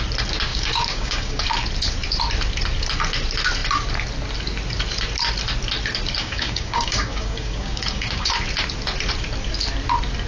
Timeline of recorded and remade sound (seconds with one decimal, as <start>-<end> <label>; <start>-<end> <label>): 0.0-0.5 recorded; 0.5-1.4 remade; 1.4-6.2 recorded; 6.2-8.3 remade; 8.3-10.3 recorded